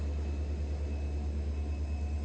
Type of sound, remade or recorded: recorded